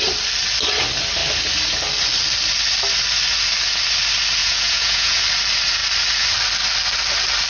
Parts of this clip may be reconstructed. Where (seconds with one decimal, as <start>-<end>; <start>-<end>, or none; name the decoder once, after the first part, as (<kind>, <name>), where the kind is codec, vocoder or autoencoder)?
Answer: 4.4-5.2 (vocoder, Vocos)